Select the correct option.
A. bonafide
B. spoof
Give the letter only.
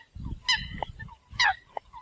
A